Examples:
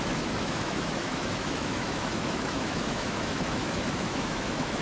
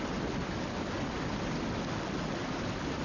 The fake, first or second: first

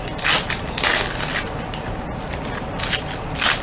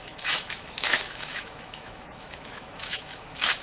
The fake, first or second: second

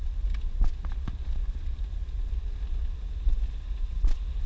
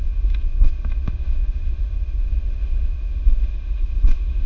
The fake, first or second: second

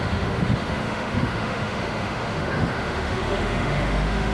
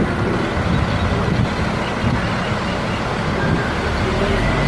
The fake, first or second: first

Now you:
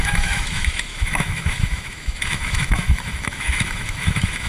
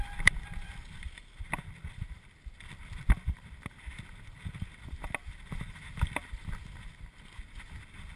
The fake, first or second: first